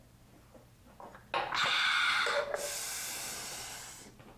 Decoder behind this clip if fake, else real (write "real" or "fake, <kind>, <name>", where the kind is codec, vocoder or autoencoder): real